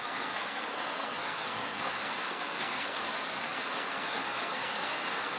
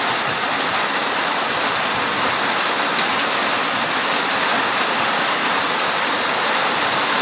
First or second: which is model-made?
first